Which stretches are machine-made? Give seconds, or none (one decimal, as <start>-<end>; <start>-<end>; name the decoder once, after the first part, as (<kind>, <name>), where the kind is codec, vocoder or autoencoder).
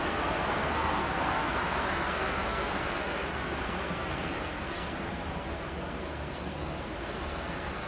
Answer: 0.0-7.9 (codec, SNAC)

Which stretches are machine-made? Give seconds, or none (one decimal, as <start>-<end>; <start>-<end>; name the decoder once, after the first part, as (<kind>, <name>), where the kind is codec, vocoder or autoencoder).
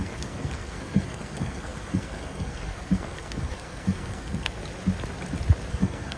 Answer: 0.0-4.6 (codec, SNAC); 5.7-6.2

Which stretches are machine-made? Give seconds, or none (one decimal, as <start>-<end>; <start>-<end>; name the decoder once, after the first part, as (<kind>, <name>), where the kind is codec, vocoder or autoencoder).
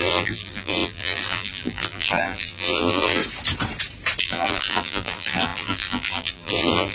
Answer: 0.0-3.2 (vocoder, BigVGAN v2); 4.2-6.9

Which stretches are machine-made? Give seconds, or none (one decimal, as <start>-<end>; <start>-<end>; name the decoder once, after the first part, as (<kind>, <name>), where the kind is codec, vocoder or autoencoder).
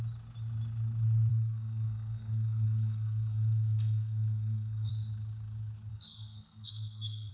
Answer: 1.3-4.9 (codec, SNAC); 5.9-7.3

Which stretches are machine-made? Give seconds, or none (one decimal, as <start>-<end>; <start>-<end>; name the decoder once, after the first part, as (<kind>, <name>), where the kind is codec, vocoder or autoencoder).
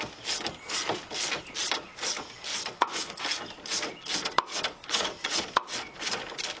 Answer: 2.5-3.2 (vocoder, Vocos); 4.8-5.4